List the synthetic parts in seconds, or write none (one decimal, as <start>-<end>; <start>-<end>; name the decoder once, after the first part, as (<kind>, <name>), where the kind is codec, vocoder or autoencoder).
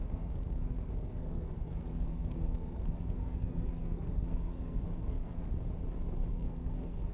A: 0.0-5.5 (codec, SNAC); 6.3-7.1